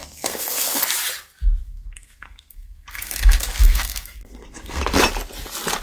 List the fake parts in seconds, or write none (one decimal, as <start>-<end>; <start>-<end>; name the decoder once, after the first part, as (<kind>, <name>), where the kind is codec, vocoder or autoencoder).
0.0-0.8 (codec, SNAC); 1.6-4.8